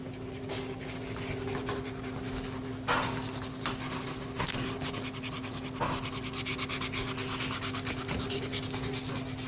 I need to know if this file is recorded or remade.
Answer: recorded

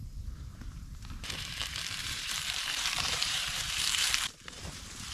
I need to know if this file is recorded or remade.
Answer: remade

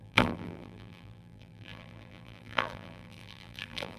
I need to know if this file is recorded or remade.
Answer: remade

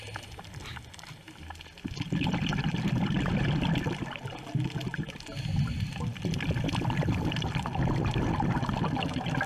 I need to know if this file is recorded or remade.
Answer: recorded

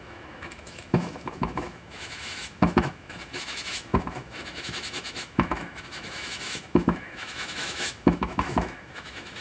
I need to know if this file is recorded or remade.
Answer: remade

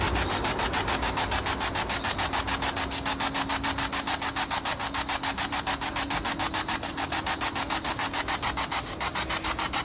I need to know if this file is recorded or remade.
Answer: recorded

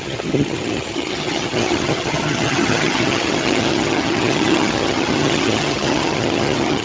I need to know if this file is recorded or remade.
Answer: remade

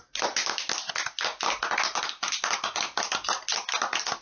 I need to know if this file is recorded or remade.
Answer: recorded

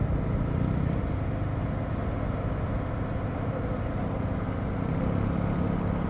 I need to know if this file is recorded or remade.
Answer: recorded